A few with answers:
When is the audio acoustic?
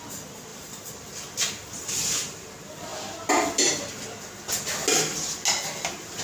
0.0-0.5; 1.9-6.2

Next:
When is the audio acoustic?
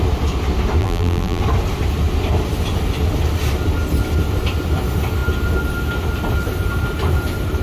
0.0-0.8; 1.4-7.6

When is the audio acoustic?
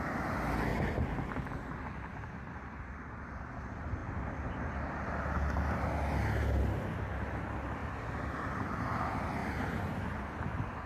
0.0-0.7; 1.4-7.8; 8.8-10.9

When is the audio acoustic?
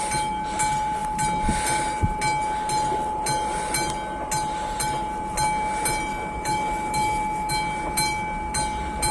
0.0-6.1; 7.5-9.1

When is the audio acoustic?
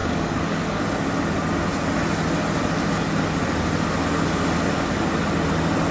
0.8-5.9